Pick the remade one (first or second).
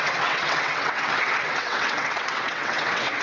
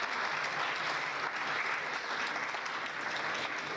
first